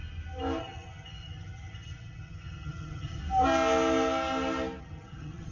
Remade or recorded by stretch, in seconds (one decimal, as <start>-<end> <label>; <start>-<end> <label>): 0.0-0.6 recorded; 0.6-3.2 remade; 3.2-4.8 recorded; 4.8-5.5 remade

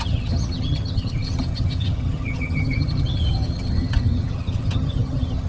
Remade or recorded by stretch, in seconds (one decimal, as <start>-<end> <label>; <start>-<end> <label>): 0.0-5.5 remade

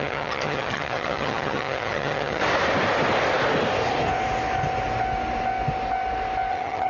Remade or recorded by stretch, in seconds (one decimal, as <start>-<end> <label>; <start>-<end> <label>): 0.0-2.4 remade; 2.4-6.5 recorded; 6.5-6.9 remade

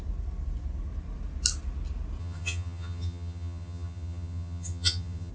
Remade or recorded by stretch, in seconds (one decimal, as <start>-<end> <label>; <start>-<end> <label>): 0.0-2.2 recorded; 2.2-5.3 remade

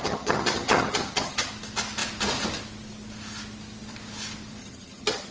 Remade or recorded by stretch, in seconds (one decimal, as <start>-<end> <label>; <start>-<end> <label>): 0.0-1.5 remade; 1.5-4.6 recorded; 4.6-5.3 remade

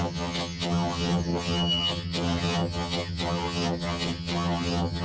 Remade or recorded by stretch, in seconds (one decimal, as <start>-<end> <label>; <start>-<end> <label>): 0.0-5.0 remade

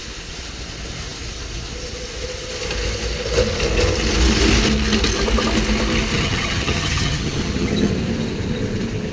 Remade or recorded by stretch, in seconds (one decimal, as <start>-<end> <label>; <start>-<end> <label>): 0.0-6.1 recorded; 6.1-7.9 remade; 7.9-9.1 recorded

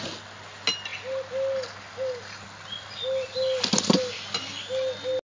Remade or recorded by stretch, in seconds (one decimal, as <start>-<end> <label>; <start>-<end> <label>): 0.0-5.3 recorded